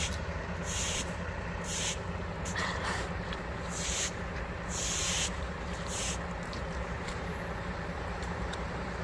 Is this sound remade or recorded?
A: remade